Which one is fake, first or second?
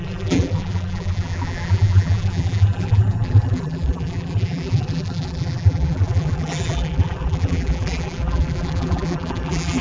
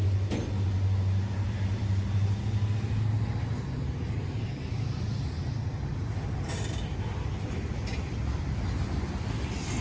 first